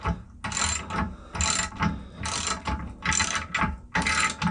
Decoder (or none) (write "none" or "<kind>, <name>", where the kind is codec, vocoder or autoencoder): none